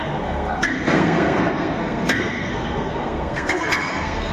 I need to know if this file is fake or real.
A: fake